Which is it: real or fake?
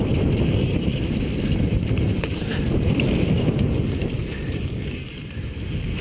fake